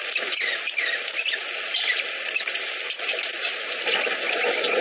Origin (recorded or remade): remade